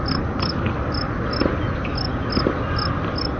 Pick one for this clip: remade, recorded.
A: recorded